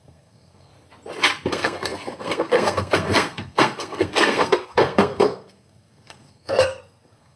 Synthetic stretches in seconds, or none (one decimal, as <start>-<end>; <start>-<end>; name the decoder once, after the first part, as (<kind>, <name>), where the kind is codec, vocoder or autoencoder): 0.0-0.7 (codec, SNAC); 1.5-7.4